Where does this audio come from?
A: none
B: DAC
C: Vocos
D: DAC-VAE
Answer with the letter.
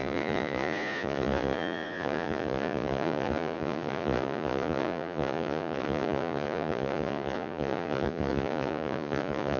C